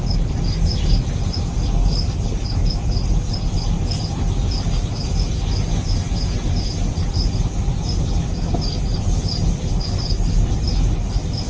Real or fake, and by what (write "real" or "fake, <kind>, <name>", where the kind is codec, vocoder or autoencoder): real